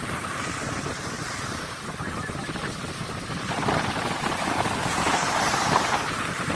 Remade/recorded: remade